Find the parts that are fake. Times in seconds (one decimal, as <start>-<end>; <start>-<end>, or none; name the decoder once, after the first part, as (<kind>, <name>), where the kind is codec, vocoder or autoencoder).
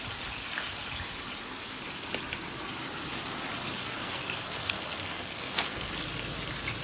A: 3.7-5.9 (codec, SNAC)